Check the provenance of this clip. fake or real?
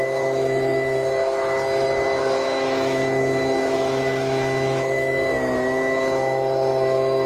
fake